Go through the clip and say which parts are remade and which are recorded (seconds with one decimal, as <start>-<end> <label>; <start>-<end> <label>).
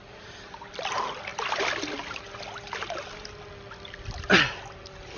0.0-5.2 recorded